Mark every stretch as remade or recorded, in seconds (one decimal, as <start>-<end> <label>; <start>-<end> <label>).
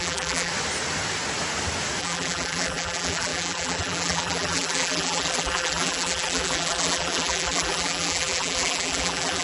0.0-0.5 remade; 0.5-2.0 recorded; 2.0-9.4 remade